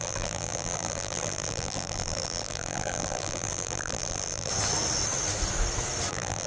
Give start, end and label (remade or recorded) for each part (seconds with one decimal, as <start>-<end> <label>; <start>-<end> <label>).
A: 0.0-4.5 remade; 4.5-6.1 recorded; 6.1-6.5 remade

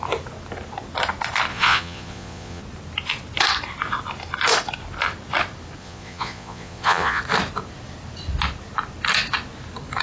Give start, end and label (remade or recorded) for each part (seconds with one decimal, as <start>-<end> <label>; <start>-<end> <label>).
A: 0.0-1.5 recorded; 1.5-2.6 remade; 2.6-5.8 recorded; 5.8-7.2 remade; 7.2-10.0 recorded

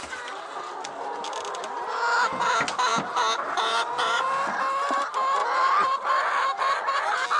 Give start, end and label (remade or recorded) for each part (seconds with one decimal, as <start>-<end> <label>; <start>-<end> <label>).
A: 0.0-7.4 recorded

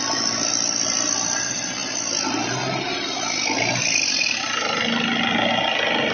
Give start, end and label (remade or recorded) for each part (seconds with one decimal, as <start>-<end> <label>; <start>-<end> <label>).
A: 0.0-6.1 recorded